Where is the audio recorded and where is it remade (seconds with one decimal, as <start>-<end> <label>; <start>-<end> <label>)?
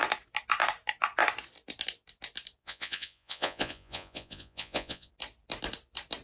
0.0-2.6 recorded; 2.6-5.1 remade; 5.1-6.2 recorded